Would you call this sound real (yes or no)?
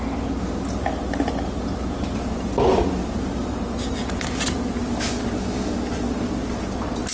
yes